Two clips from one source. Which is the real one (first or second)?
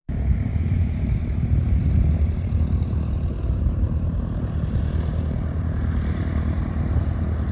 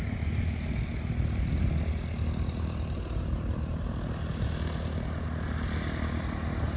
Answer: second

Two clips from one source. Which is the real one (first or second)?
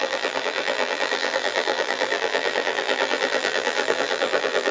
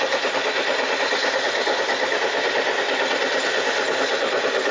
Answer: second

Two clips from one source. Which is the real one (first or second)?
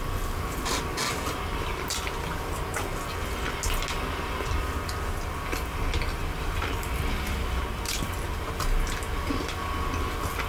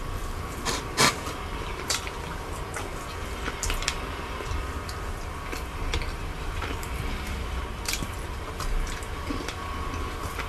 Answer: first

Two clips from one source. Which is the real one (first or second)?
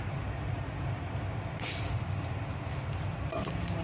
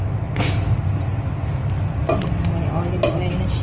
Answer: second